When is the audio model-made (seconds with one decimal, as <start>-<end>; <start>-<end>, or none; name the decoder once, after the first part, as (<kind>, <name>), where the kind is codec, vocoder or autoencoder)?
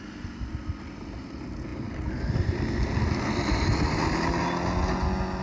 none